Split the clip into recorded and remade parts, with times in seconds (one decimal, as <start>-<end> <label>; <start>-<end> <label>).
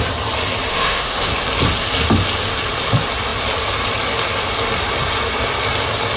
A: 0.0-0.7 recorded; 0.7-1.3 remade; 1.3-6.2 recorded